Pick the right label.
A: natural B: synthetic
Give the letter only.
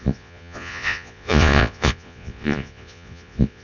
B